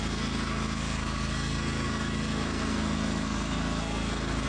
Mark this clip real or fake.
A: fake